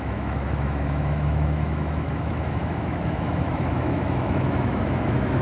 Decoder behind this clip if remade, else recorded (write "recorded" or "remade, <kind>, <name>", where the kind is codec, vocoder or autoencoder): remade, autoencoder, DAC-VAE